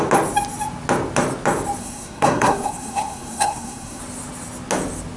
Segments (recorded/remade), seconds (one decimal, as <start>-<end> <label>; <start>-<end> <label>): 0.0-1.8 recorded; 1.8-4.0 remade; 4.0-5.2 recorded